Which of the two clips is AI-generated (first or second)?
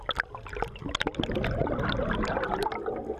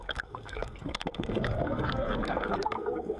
second